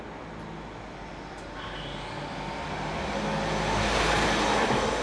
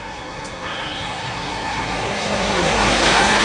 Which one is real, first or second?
first